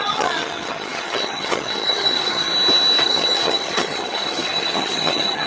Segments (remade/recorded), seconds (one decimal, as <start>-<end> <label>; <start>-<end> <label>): 0.0-2.5 remade; 2.5-3.0 recorded; 3.0-5.5 remade